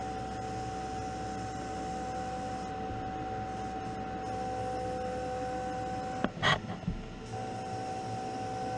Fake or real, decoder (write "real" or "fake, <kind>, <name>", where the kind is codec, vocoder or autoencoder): real